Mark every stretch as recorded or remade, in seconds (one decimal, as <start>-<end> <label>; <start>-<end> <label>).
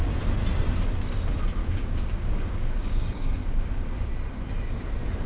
0.0-1.6 recorded; 1.6-4.1 remade; 4.1-5.3 recorded